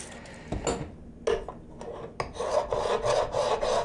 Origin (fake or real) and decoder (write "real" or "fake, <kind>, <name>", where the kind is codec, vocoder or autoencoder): real